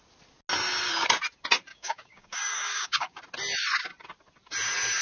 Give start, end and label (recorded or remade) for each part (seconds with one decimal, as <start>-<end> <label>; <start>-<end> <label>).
0.0-1.7 recorded; 1.7-3.2 remade; 3.2-5.0 recorded